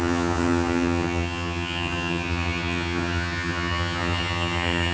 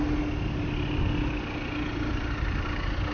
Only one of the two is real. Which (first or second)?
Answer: second